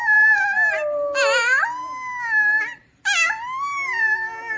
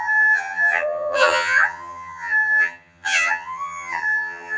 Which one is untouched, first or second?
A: first